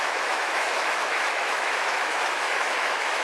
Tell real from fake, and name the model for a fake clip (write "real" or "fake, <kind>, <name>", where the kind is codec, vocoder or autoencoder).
fake, autoencoder, DAC-VAE